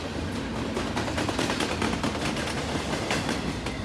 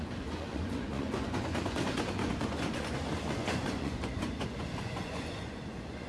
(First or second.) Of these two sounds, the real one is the first